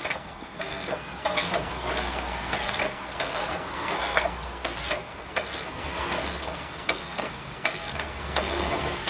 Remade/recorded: remade